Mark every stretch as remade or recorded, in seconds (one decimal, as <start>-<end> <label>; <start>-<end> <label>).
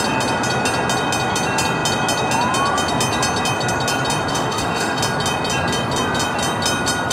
0.0-4.3 recorded; 4.3-5.0 remade; 5.0-7.1 recorded